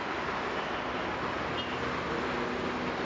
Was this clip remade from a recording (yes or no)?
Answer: no